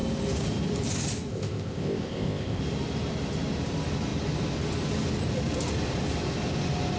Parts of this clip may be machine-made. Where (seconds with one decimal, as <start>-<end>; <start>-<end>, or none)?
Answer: 1.3-2.6